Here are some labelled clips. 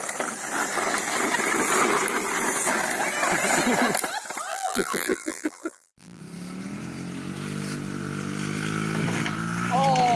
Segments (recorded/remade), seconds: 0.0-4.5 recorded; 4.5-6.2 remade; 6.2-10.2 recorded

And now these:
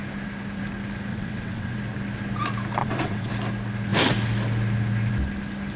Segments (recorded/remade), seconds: 0.0-1.1 recorded; 1.1-1.8 remade; 1.8-2.8 recorded; 2.8-3.3 remade; 3.3-5.8 recorded

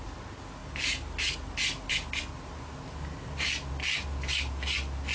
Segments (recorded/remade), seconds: 0.0-5.1 recorded

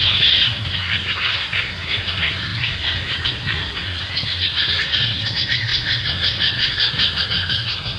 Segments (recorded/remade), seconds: 0.0-8.0 remade